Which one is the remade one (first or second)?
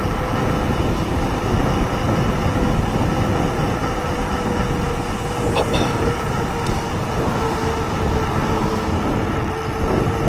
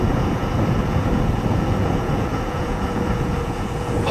second